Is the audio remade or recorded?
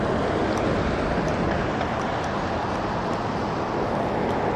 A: recorded